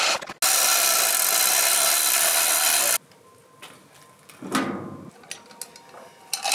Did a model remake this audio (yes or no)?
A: no